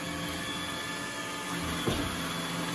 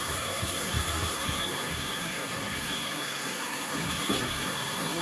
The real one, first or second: first